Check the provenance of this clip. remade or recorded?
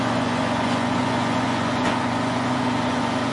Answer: remade